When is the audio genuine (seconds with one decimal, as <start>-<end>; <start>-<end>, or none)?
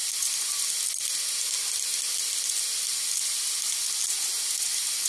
0.0-5.1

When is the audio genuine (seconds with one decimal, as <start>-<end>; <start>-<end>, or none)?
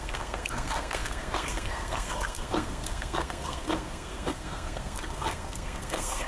none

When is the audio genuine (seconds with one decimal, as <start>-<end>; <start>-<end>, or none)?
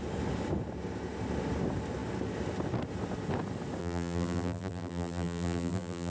0.0-3.8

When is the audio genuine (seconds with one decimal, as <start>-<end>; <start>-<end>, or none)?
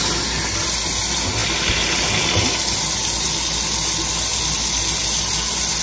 0.0-5.8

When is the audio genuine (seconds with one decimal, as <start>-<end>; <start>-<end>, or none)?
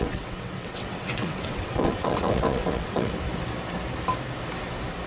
3.1-5.1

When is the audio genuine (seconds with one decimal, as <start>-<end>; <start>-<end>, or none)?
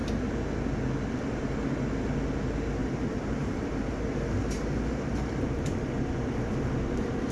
0.0-2.8